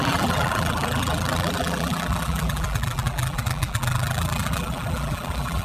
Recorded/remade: remade